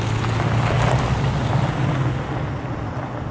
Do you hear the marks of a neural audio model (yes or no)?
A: no